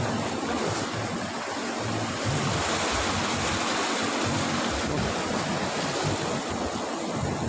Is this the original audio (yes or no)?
yes